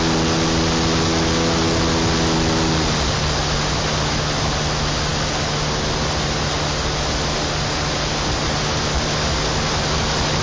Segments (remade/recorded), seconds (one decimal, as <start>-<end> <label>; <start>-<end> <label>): 0.0-10.4 recorded